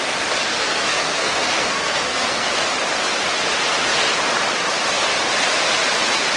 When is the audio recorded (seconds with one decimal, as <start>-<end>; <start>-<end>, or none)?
0.0-0.5; 2.5-6.4

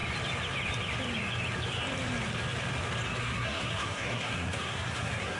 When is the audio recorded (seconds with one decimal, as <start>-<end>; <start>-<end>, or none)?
0.0-3.2

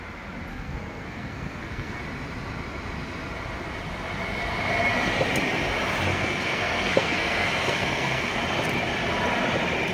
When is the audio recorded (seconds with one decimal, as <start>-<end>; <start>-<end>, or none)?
0.0-0.5; 2.0-6.1; 8.4-9.9

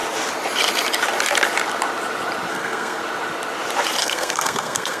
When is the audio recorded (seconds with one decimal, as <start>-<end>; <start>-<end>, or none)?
0.0-2.5; 3.0-4.0

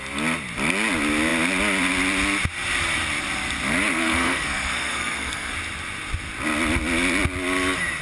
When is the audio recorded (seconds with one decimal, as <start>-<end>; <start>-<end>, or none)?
0.0-3.9; 5.5-8.0